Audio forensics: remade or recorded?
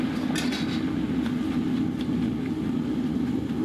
recorded